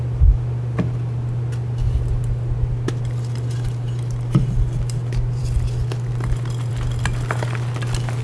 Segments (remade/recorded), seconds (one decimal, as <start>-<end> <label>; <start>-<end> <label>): 0.0-8.2 recorded